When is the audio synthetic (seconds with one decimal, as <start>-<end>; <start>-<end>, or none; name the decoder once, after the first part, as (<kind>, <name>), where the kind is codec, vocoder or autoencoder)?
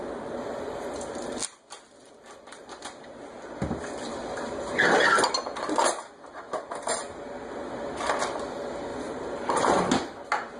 8.9-9.8 (vocoder, BigVGAN v2)